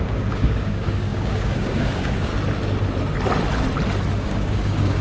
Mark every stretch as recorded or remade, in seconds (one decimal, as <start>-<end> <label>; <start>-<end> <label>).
0.0-2.3 remade; 2.3-4.1 recorded; 4.1-5.0 remade